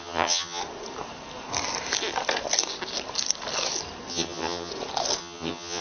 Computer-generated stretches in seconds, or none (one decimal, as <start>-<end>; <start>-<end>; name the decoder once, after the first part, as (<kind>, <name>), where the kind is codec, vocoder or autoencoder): 0.0-0.6 (vocoder, HiFi-GAN); 4.1-4.7; 5.2-5.8